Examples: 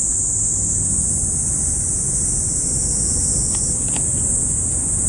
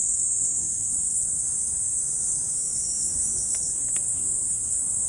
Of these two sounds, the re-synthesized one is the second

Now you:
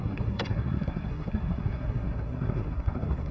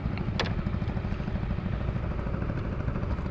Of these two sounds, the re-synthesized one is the first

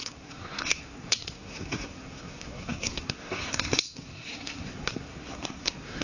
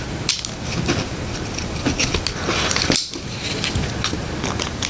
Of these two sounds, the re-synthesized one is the first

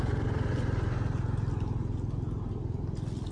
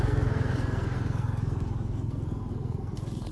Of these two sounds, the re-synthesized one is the second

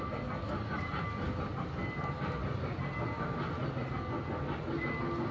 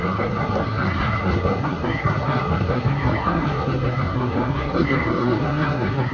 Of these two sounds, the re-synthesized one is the second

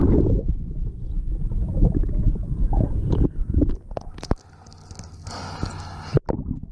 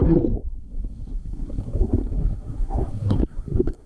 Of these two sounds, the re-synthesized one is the second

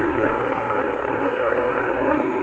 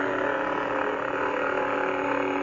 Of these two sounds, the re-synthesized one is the first